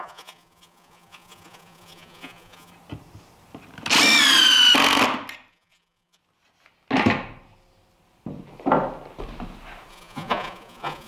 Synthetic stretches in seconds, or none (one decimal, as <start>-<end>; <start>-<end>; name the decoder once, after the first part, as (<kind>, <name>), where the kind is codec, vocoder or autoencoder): 0.0-2.7 (vocoder, Vocos); 5.5-6.2; 9.9-11.1